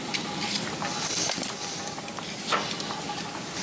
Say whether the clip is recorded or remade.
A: recorded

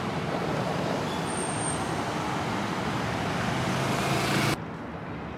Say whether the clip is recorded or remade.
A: recorded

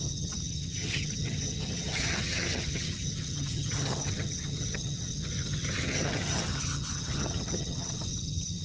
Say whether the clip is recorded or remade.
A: remade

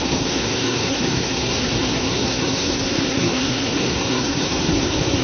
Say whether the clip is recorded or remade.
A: remade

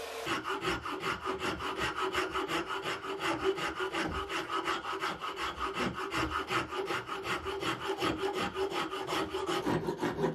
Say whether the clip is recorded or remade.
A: recorded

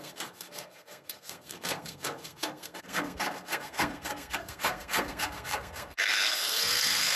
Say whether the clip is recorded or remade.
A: remade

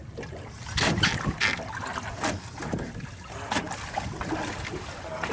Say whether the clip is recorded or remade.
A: recorded